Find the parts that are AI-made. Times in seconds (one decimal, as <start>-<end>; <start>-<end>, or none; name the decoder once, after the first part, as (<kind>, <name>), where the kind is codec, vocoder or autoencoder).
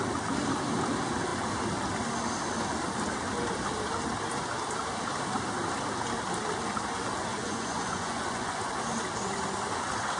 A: 7.3-8.7 (vocoder, Vocos)